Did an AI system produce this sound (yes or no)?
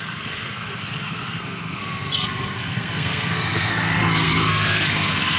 yes